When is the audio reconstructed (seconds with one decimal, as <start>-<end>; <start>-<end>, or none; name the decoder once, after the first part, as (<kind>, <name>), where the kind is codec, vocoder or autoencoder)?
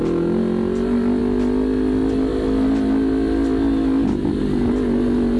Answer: none